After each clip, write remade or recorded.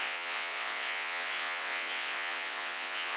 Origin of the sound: remade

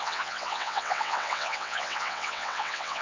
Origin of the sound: remade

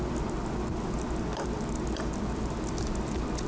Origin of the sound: recorded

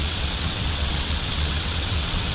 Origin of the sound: remade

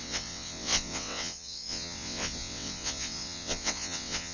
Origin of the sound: remade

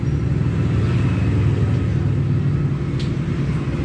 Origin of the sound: recorded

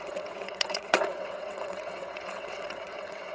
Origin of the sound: remade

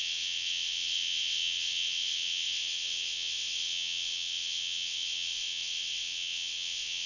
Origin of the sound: remade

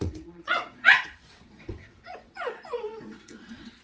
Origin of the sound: remade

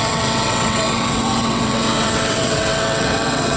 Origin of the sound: remade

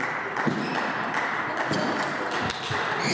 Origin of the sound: recorded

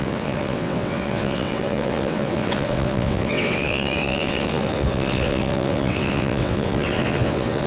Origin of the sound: remade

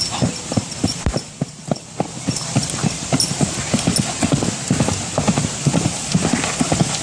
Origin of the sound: recorded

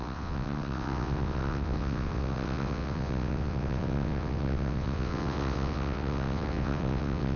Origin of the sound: remade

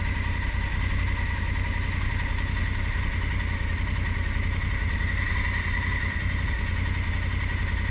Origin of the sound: recorded